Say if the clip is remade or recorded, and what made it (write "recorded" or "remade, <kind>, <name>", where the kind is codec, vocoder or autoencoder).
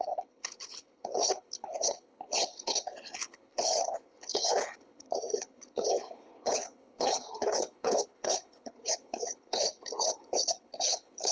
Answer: remade, codec, HILCodec